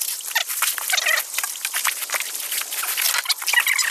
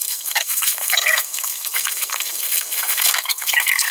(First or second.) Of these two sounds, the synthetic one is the second